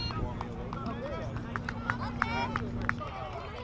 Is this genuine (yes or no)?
yes